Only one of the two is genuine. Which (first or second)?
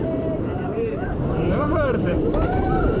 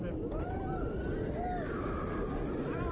second